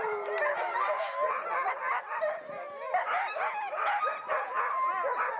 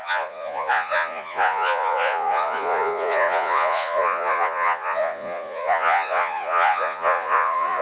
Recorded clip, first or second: first